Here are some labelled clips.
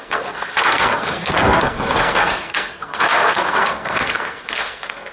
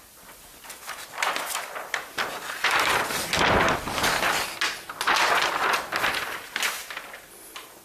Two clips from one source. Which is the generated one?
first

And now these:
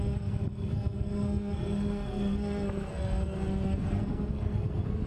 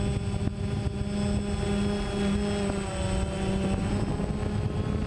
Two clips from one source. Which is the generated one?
first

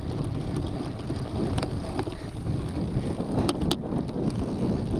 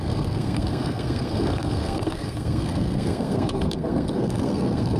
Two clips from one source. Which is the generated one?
second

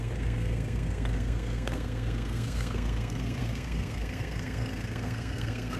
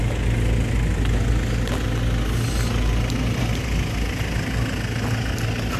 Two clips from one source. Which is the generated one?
first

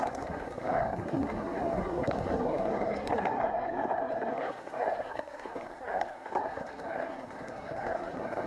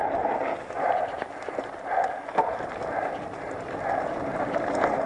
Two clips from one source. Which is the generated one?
first